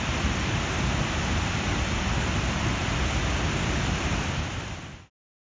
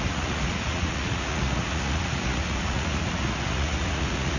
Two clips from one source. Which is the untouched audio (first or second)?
first